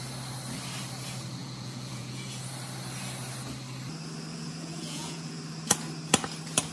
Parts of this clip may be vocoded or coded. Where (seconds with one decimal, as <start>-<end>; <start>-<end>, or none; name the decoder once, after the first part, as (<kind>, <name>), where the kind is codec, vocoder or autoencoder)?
1.4-2.4 (vocoder, Vocos); 4.3-5.4